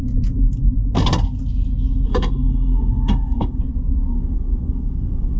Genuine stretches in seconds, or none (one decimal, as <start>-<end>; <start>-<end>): 0.0-2.1; 3.6-4.1